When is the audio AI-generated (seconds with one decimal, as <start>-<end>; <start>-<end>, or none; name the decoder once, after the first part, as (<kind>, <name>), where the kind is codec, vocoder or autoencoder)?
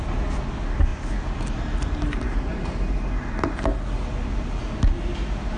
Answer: none